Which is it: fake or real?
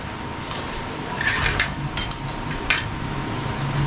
real